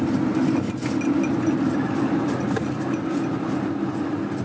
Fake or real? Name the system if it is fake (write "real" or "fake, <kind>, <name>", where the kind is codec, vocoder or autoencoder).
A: real